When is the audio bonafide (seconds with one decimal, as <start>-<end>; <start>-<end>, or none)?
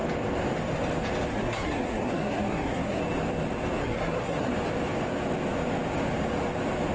0.0-1.3; 3.0-3.8; 4.5-6.9